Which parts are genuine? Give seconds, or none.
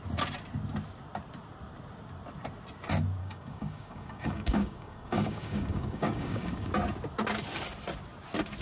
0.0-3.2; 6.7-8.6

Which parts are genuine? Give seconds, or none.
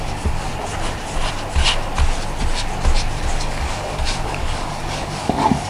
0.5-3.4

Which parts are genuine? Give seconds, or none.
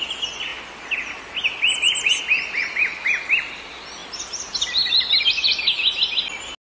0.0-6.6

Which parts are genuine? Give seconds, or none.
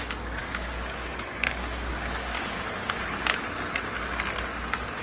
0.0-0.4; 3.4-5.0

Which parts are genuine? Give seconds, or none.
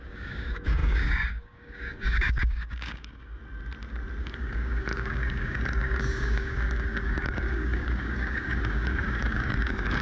3.4-4.2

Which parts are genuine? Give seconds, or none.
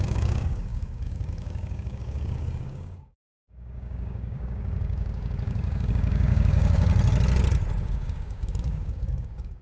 6.9-7.8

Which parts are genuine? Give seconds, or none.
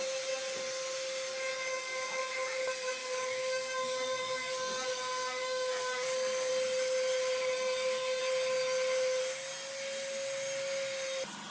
0.0-1.7; 2.3-3.0; 6.5-7.4; 8.2-11.5